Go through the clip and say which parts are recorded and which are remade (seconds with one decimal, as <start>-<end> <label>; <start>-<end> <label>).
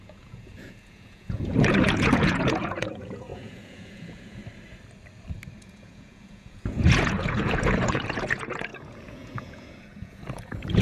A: 0.0-4.4 remade; 4.4-5.6 recorded; 5.6-10.8 remade